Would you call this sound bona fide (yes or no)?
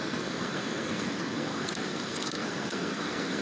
no